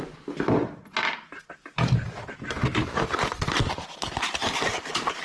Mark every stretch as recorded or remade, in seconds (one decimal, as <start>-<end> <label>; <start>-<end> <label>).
0.0-5.2 recorded